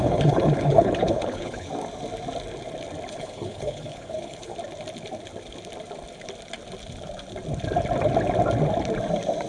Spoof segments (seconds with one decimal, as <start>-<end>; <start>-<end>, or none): 0.0-1.7; 3.1-4.5